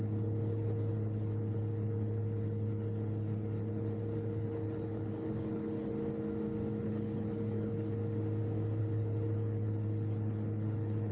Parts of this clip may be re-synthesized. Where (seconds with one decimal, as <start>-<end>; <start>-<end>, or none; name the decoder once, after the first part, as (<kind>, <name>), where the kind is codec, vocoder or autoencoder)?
0.0-5.9 (codec, HILCodec); 6.8-8.0; 8.8-11.1